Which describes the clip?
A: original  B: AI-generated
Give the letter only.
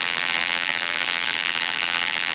B